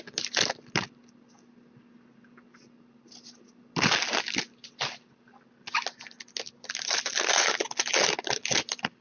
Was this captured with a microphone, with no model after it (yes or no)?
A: yes